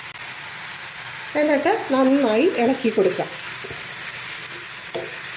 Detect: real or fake real